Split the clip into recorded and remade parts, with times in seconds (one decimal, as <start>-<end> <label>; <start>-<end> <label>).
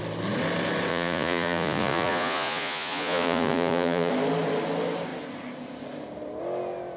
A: 0.0-0.9 recorded; 0.9-4.1 remade; 4.1-7.0 recorded